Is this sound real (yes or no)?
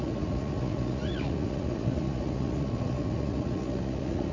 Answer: no